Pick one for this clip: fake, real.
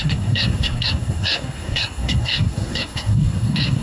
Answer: fake